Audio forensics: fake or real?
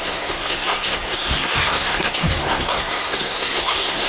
fake